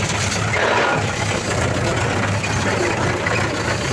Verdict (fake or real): fake